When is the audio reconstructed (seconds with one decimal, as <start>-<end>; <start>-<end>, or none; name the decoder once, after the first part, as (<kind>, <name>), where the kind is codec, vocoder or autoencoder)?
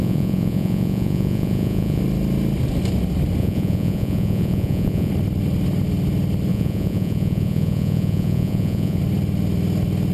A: 0.0-2.0 (vocoder, Vocos); 3.4-5.1; 6.5-9.0